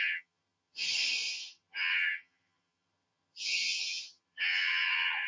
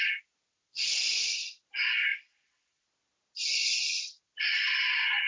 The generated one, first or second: first